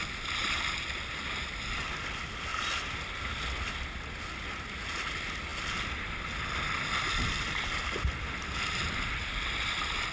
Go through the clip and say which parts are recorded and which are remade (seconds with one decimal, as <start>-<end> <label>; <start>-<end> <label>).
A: 0.0-10.1 recorded